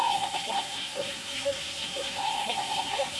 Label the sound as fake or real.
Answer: fake